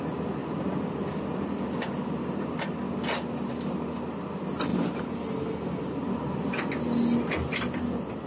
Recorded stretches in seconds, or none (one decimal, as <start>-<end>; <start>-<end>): 0.0-8.3